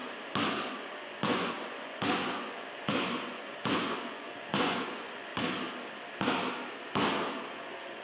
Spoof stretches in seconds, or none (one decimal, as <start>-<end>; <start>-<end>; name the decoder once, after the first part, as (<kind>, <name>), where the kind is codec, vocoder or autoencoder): 0.5-5.3 (vocoder, Vocos); 7.5-8.0